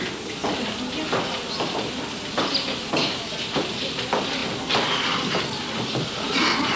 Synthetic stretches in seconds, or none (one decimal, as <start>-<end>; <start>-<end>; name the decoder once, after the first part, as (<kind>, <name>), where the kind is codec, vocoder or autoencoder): none